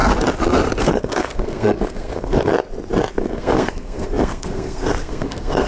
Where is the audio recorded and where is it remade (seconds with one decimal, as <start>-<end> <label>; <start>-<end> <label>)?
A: 0.0-0.8 recorded; 0.8-2.5 remade; 2.5-3.1 recorded; 3.1-5.7 remade